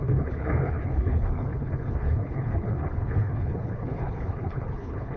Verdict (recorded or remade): remade